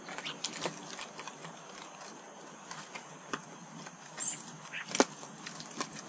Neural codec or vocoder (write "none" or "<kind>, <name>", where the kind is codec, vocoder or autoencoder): none